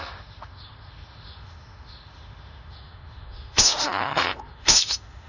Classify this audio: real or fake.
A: fake